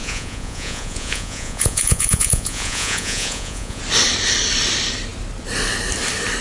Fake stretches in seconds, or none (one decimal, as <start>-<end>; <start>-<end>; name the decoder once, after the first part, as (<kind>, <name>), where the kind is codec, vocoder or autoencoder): 0.0-3.8 (vocoder, Vocos)